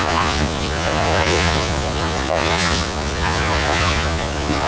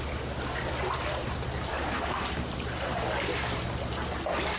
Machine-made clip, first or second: first